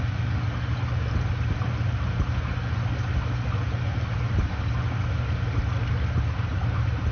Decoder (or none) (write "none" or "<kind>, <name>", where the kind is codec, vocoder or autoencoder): none